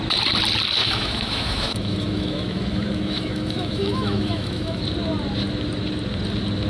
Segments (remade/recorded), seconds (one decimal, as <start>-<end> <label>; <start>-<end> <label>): 0.0-0.8 recorded; 0.8-4.8 remade; 4.8-6.7 recorded